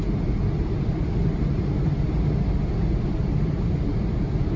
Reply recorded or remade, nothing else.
recorded